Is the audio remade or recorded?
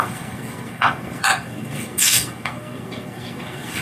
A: remade